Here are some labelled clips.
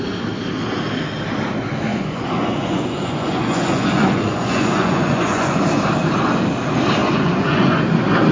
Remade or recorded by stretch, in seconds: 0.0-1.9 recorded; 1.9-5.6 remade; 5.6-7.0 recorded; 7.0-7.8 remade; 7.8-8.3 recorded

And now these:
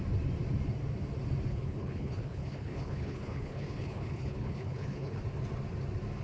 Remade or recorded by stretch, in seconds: 0.0-1.5 recorded; 1.5-5.2 remade; 5.2-6.2 recorded